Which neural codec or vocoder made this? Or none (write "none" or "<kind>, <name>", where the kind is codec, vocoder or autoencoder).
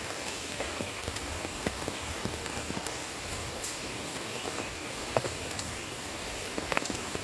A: codec, DAC